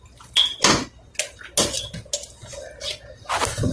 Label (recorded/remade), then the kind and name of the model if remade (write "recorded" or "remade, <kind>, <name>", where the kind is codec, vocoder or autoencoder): recorded